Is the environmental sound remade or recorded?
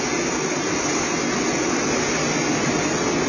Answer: recorded